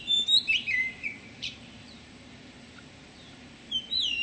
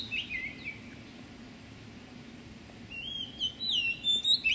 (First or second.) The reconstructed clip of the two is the first